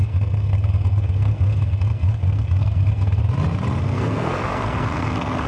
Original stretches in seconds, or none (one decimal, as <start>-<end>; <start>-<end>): 3.2-3.8